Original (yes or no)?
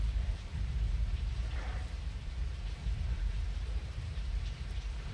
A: no